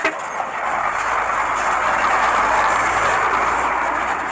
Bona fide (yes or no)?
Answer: yes